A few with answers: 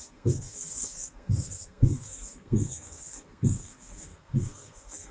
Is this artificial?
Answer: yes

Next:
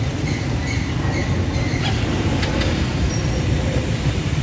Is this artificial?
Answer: no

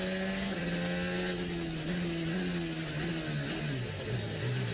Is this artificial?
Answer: no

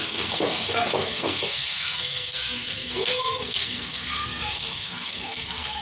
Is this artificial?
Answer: yes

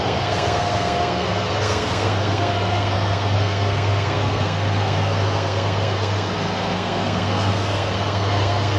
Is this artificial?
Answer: yes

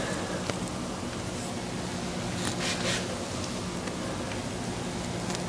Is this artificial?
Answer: no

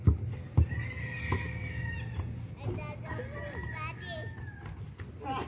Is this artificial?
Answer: no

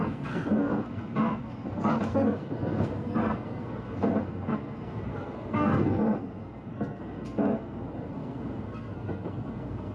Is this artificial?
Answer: yes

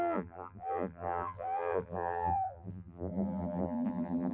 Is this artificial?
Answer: yes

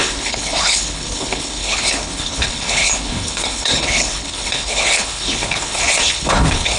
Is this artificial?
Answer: yes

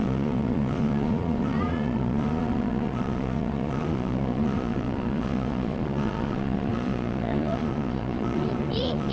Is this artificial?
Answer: yes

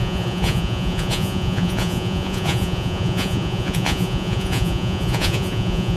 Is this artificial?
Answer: yes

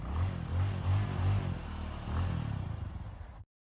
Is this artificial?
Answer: no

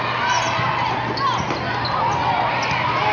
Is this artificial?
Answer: no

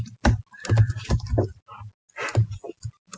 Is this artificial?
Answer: no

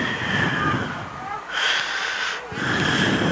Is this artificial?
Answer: no